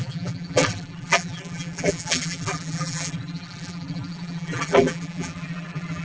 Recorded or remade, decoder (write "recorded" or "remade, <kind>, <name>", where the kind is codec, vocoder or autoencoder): remade, vocoder, BigVGAN v2